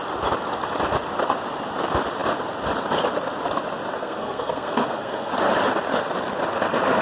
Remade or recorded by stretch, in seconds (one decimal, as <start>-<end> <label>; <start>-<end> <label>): 0.0-4.0 recorded; 4.0-5.3 remade; 5.3-7.0 recorded